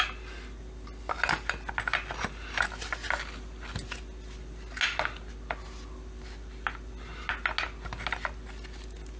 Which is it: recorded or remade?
recorded